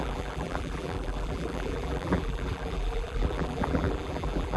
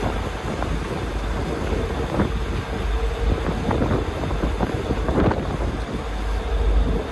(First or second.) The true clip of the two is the second